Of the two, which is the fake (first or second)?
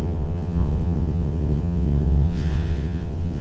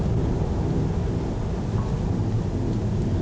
first